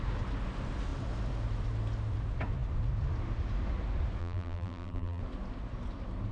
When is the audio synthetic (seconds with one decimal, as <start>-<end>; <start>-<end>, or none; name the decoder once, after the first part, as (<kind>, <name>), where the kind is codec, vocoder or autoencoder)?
4.2-5.2 (vocoder, BigVGAN v2)

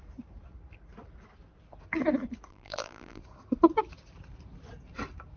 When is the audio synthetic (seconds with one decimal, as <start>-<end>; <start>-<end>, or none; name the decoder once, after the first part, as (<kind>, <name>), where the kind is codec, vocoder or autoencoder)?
2.5-3.2 (vocoder, BigVGAN v2)

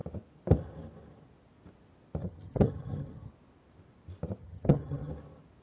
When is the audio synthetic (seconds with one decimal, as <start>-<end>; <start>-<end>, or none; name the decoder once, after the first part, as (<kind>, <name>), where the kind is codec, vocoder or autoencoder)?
2.2-3.3 (vocoder, HiFi-GAN); 4.4-5.1

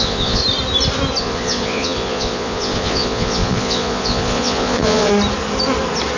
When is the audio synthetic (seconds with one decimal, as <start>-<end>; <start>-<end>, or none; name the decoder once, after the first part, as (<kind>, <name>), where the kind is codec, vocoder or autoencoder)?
0.0-0.4 (vocoder, Vocos); 1.2-5.1

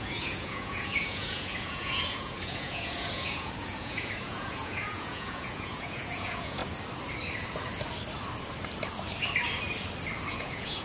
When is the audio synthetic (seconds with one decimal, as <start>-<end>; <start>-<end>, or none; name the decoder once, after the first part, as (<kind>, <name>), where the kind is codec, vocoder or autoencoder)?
0.0-6.6 (vocoder, Vocos); 10.3-10.8

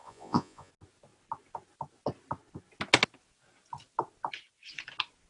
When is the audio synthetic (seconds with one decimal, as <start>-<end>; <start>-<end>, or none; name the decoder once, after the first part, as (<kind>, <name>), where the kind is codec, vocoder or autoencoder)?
0.0-0.7 (vocoder, Vocos)

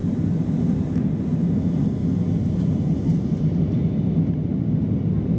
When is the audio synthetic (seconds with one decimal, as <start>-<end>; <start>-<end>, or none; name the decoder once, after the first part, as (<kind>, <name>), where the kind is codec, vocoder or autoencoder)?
none